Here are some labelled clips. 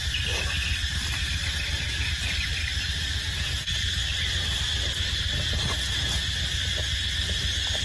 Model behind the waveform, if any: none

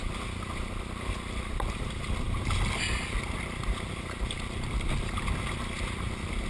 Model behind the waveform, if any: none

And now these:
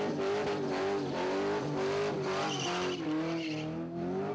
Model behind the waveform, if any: vocoder, BigVGAN v2